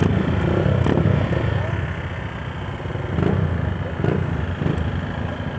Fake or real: real